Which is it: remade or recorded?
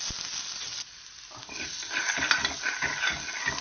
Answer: recorded